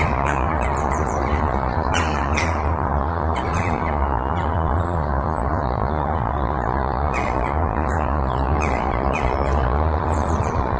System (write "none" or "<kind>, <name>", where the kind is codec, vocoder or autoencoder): vocoder, Vocos